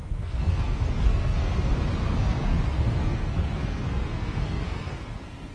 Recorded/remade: remade